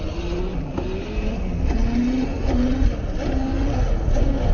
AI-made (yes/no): no